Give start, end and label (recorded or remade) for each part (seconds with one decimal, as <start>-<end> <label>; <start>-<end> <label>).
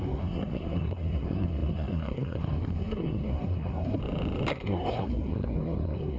0.0-4.0 remade; 4.0-4.5 recorded; 4.5-6.2 remade